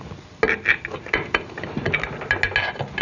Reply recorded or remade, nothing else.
recorded